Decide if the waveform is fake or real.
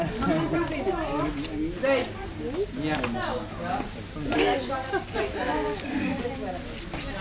real